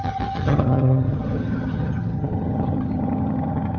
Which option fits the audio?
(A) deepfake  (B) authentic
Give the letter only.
A